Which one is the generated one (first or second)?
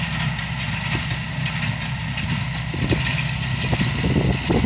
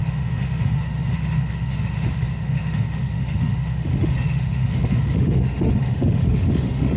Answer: second